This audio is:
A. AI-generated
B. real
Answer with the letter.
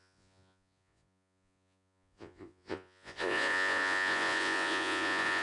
A